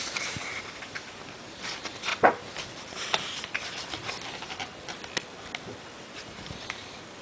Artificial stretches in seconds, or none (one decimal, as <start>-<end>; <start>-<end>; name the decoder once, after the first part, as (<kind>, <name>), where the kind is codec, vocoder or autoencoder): 0.0-2.1 (vocoder, BigVGAN v2); 2.9-4.7; 6.0-7.2